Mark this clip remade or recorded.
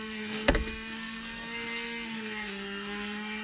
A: remade